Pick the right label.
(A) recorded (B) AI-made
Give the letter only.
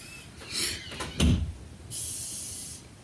A